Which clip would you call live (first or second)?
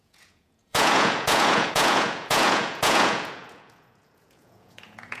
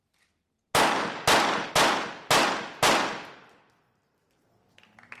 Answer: second